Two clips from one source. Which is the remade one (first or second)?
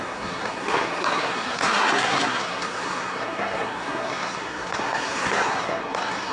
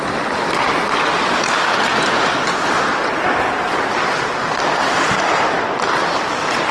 first